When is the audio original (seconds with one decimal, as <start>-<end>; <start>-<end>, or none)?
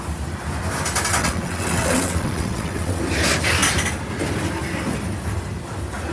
0.0-1.2; 3.0-6.1